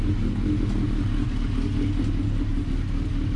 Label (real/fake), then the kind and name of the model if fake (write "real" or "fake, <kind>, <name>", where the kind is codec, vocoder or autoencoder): real